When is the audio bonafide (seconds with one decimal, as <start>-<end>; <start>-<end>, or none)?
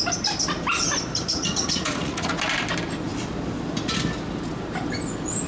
0.0-1.3; 2.4-5.5